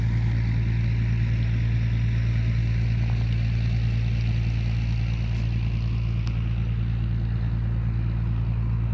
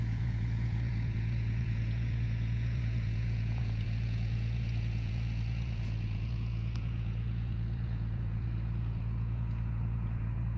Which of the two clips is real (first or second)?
first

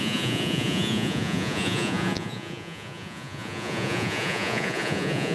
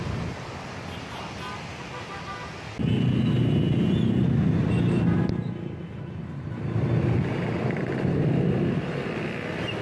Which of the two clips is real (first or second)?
second